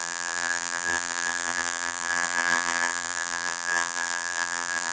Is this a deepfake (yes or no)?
yes